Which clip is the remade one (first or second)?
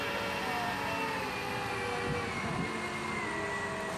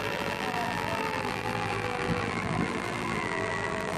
second